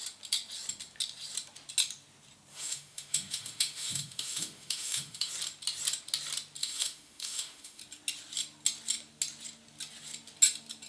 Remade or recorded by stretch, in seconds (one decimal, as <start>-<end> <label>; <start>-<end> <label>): 0.0-2.5 recorded; 2.5-5.3 remade; 5.3-6.6 recorded; 6.6-7.8 remade; 7.8-10.9 recorded